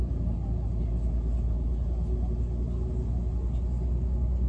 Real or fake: real